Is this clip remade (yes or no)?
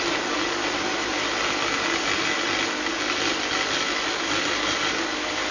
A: no